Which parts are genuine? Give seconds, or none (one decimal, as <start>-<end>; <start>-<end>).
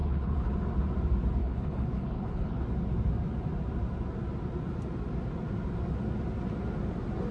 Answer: 0.5-1.4; 2.6-7.3